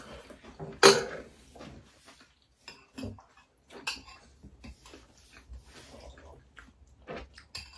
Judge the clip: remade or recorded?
recorded